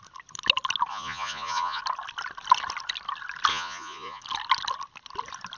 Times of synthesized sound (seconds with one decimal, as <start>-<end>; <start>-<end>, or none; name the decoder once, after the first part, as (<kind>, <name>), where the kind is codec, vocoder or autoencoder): 0.9-1.8 (vocoder, Vocos); 3.5-4.2